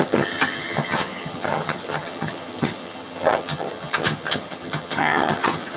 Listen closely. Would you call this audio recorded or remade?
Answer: remade